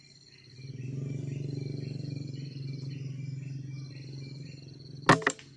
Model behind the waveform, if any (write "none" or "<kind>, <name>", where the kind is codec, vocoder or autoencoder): none